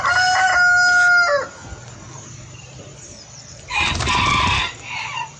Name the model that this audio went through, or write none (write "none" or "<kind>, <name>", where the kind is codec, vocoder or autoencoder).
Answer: none